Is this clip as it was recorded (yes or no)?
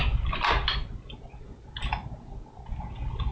yes